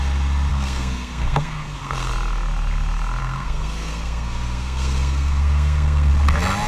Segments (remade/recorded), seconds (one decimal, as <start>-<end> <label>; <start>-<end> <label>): 0.0-0.5 recorded; 0.5-2.1 remade; 2.1-3.2 recorded; 3.2-6.1 remade; 6.1-6.7 recorded